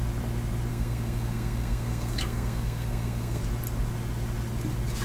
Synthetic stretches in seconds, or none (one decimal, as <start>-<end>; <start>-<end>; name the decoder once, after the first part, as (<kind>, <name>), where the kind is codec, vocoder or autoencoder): 0.7-3.4 (codec, SNAC)